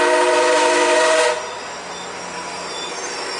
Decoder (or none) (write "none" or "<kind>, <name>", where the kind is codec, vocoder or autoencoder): none